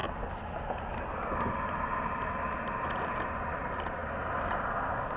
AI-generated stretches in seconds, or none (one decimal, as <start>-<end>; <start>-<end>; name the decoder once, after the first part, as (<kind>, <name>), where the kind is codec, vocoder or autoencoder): none